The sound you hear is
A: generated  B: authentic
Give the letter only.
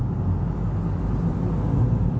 B